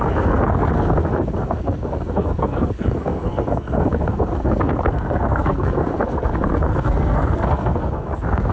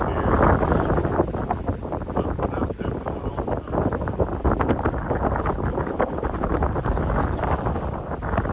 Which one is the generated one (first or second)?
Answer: first